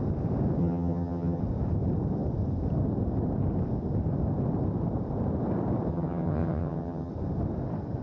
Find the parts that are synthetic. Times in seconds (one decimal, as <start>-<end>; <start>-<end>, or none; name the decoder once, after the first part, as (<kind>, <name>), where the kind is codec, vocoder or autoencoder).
0.6-1.4 (vocoder, HiFi-GAN); 5.9-7.1